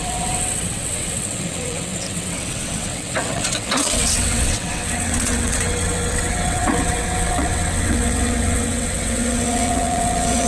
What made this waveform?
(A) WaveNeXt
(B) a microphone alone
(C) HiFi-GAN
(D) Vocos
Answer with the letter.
A